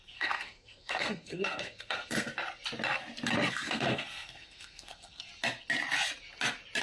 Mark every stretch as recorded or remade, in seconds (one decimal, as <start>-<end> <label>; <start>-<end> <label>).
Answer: 0.0-2.3 remade; 2.3-3.5 recorded; 3.5-5.3 remade; 5.3-6.8 recorded